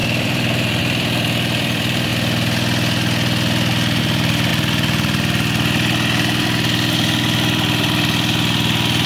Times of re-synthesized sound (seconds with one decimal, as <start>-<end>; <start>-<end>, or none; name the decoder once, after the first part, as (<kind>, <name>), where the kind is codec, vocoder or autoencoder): 0.0-2.1 (vocoder, BigVGAN v2); 4.0-4.5